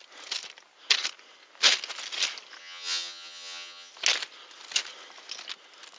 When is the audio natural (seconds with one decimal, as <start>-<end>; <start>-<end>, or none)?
0.0-2.6; 3.9-6.0

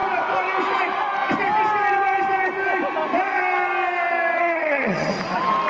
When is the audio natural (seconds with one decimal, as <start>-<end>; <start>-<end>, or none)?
0.0-4.4; 5.1-5.7